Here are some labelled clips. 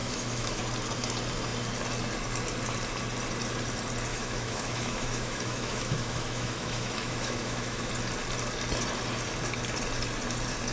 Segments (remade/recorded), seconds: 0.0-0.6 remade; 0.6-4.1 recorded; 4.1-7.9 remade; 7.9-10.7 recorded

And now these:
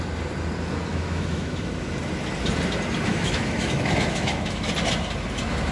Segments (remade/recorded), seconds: 0.0-0.9 recorded; 0.9-1.7 remade; 1.7-3.1 recorded; 3.1-4.7 remade; 4.7-5.7 recorded

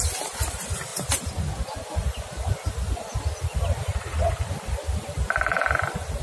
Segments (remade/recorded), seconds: 0.0-6.2 recorded

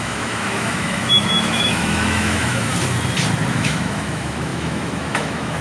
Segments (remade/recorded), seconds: 0.0-2.7 remade; 2.7-3.5 recorded; 3.5-5.6 remade

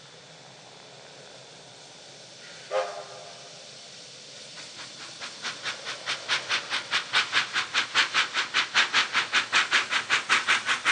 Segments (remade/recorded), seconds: 0.0-10.9 recorded